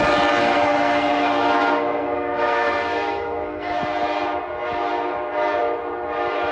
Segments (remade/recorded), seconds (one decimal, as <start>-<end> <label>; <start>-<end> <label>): 0.0-0.4 recorded; 0.4-3.8 remade; 3.8-6.5 recorded